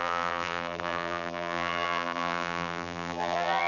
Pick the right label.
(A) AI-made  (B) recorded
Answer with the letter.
A